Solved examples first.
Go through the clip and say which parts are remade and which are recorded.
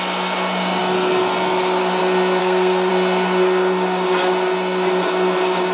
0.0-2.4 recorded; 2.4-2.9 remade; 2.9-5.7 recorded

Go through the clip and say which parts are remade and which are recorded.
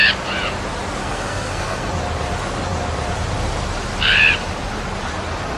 0.0-1.0 recorded; 1.0-1.9 remade; 1.9-5.6 recorded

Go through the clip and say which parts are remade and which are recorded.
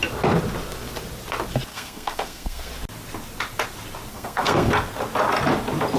0.0-1.7 recorded; 1.7-2.7 remade; 2.7-4.1 recorded; 4.1-4.7 remade; 4.7-6.0 recorded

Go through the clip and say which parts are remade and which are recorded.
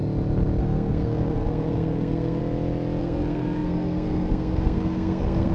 0.0-0.6 recorded; 0.6-2.4 remade; 2.4-3.0 recorded; 3.0-5.5 remade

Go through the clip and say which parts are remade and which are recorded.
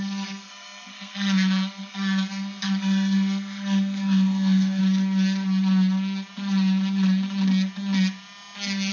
0.0-4.8 remade; 4.8-8.9 recorded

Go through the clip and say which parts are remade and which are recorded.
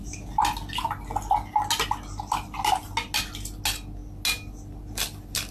0.0-5.5 recorded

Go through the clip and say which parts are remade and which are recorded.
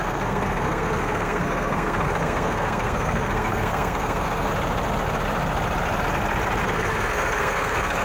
0.0-4.5 remade; 4.5-6.6 recorded; 6.6-8.0 remade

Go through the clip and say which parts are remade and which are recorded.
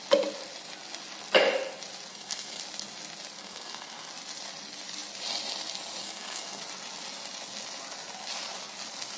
0.0-2.1 recorded; 2.1-2.6 remade; 2.6-3.4 recorded; 3.4-4.1 remade; 4.1-6.0 recorded; 6.0-6.6 remade; 6.6-9.2 recorded